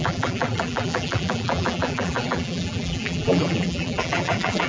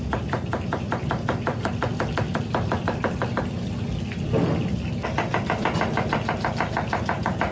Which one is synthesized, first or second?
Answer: first